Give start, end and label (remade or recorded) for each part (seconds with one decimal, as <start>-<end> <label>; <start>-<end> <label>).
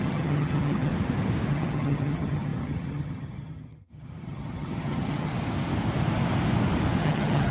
0.0-0.9 remade; 0.9-1.5 recorded; 1.5-5.3 remade; 5.3-7.0 recorded; 7.0-7.5 remade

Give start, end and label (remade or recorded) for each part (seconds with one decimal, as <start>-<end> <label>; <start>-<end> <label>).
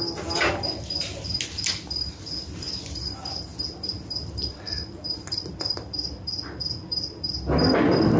0.0-8.2 recorded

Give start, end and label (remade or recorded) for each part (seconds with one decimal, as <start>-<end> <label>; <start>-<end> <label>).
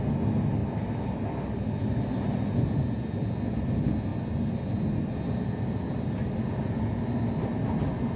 0.0-8.2 recorded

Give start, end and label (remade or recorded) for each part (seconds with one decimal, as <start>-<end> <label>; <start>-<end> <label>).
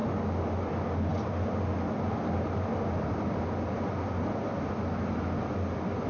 0.0-6.1 recorded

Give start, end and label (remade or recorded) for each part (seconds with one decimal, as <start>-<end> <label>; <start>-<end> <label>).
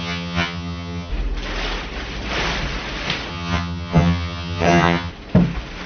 0.0-1.1 remade; 1.1-3.3 recorded; 3.3-5.1 remade; 5.1-5.9 recorded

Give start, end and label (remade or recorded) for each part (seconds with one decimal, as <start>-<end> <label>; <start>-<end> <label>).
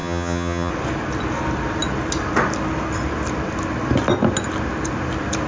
0.0-0.7 remade; 0.7-5.5 recorded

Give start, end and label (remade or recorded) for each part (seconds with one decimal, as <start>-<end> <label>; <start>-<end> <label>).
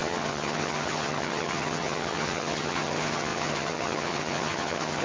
0.0-5.0 remade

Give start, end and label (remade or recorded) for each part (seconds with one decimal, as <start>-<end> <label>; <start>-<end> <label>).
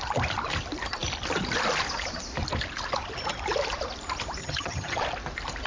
0.0-4.4 recorded; 4.4-5.0 remade; 5.0-5.7 recorded